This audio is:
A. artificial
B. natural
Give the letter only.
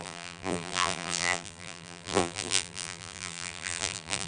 A